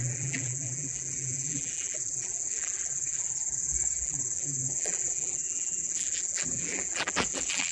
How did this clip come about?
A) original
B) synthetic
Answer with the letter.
B